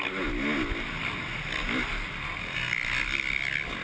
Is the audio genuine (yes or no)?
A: yes